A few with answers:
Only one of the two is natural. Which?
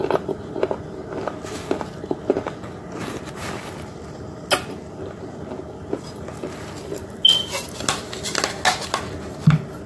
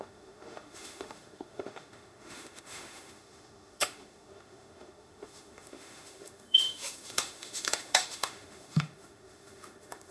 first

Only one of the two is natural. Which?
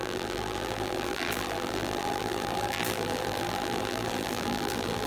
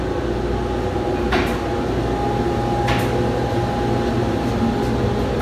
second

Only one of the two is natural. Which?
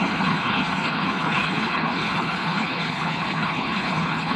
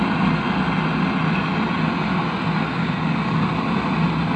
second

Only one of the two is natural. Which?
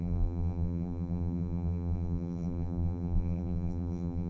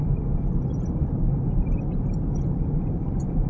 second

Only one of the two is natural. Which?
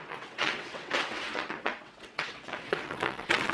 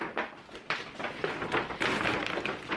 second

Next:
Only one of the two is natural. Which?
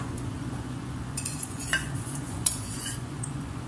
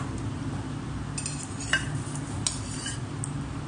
second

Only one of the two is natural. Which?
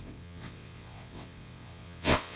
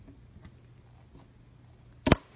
second